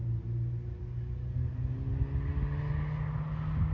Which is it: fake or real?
real